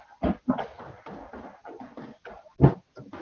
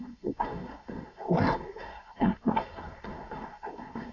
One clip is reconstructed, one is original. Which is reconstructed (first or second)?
second